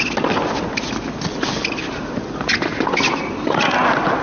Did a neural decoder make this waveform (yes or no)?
no